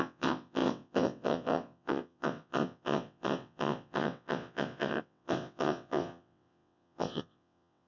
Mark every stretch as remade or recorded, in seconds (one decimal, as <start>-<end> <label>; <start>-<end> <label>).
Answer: 0.0-7.9 remade